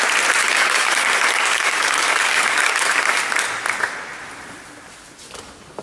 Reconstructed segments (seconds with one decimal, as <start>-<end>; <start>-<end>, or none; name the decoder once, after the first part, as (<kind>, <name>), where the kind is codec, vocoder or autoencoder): 0.4-3.2 (codec, DAC)